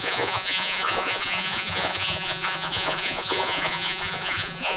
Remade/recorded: remade